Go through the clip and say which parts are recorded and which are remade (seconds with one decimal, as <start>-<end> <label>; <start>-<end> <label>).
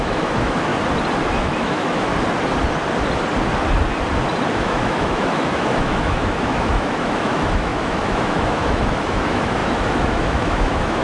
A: 0.0-0.7 remade; 0.7-1.4 recorded; 1.4-2.1 remade; 2.1-4.5 recorded; 4.5-11.0 remade